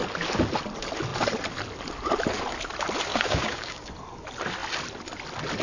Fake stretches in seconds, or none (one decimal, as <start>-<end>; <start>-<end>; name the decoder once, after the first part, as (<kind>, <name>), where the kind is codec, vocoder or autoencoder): 3.1-3.9 (codec, DAC)